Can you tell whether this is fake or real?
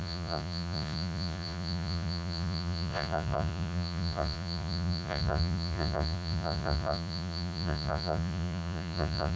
fake